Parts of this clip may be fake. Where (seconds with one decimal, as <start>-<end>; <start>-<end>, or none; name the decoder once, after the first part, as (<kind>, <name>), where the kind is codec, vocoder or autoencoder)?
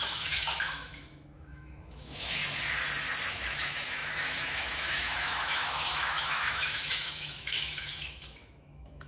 0.0-2.4 (autoencoder, DAC-VAE); 3.3-9.1